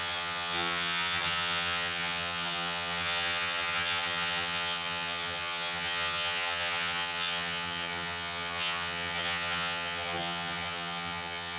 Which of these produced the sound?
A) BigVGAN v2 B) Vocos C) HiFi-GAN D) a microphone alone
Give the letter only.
C